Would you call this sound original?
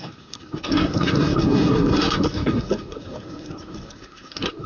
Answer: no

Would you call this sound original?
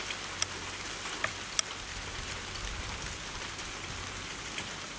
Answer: yes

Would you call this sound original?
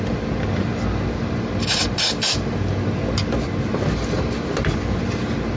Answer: yes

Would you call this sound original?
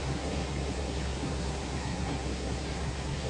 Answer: no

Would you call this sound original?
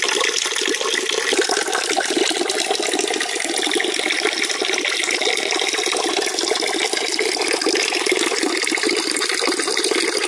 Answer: yes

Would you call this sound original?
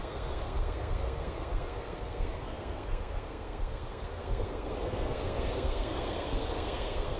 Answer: no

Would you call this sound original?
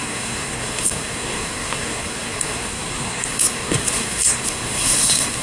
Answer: no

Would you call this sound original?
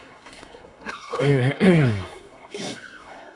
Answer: no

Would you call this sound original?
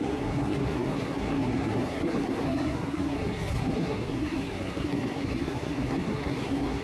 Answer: no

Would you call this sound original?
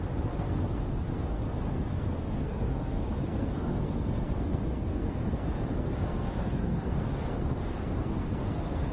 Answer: no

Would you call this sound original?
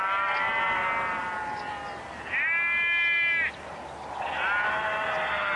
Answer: yes